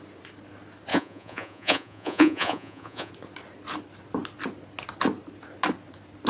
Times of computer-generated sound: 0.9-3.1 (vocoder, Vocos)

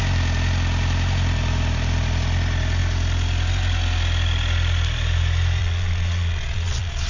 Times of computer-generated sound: 5.6-7.1 (vocoder, Vocos)

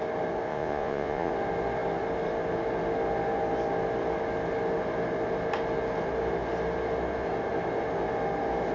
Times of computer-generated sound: 0.5-1.3 (vocoder, Vocos)

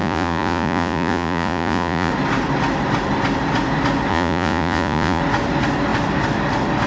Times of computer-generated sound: 0.0-2.1 (vocoder, Vocos); 4.1-5.2

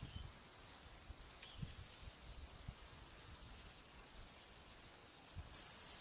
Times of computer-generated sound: 0.0-0.5 (vocoder, Vocos); 1.1-5.0

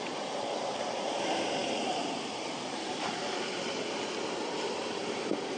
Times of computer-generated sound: none

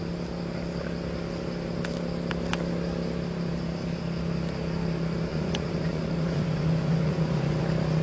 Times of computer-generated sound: 5.3-7.6 (vocoder, Vocos)

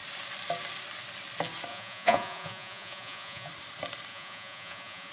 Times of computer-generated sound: 1.7-3.5 (vocoder, Vocos); 4.1-5.1